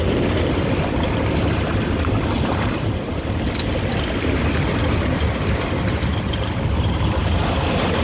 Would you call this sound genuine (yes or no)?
yes